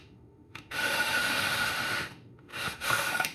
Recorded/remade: remade